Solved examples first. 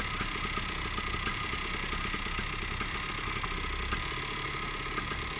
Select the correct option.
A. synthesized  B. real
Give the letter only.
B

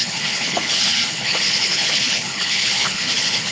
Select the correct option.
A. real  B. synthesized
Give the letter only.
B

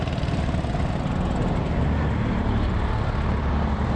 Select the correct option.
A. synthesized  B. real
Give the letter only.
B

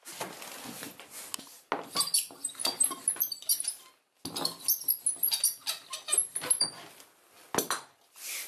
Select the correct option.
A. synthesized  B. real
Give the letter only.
B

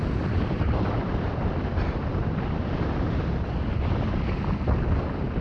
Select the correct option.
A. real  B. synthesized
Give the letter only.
A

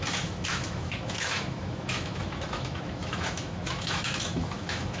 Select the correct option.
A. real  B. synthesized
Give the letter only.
B